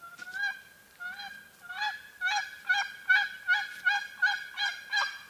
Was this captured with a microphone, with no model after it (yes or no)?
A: yes